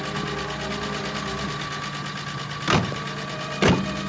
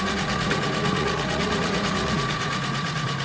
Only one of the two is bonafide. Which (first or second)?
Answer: first